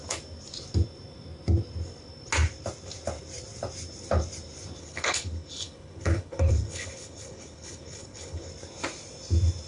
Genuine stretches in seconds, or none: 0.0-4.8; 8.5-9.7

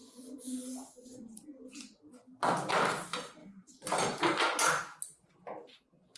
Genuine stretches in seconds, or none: 0.0-6.2